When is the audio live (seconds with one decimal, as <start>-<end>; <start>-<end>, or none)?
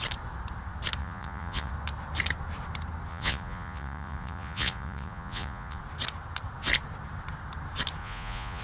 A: 0.0-1.0; 1.7-3.1; 5.8-8.0